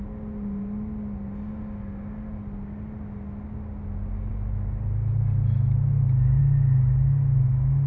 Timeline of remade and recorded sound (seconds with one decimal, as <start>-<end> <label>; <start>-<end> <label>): 0.0-7.9 recorded